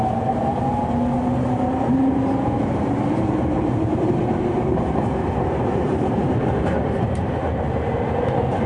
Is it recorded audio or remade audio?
remade